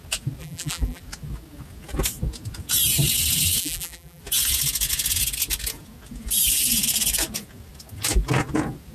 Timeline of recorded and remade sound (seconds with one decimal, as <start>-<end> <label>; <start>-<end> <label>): 0.0-0.4 recorded; 0.4-1.0 remade; 1.0-3.6 recorded; 3.6-4.2 remade; 4.2-8.9 recorded